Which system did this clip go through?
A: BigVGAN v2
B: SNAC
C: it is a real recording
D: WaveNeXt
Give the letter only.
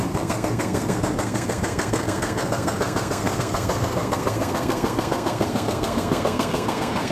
B